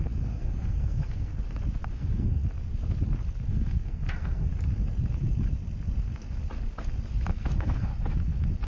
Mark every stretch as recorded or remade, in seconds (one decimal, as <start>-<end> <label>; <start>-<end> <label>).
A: 0.0-1.3 remade; 1.3-1.9 recorded; 1.9-2.4 remade; 2.4-3.5 recorded; 3.5-4.5 remade; 4.5-7.3 recorded; 7.3-7.9 remade; 7.9-8.7 recorded